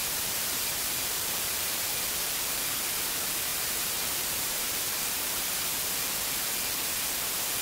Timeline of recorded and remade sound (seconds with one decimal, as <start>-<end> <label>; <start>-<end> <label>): 0.0-1.8 remade; 1.8-3.5 recorded; 3.5-5.6 remade; 5.6-7.6 recorded